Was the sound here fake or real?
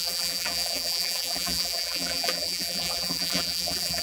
fake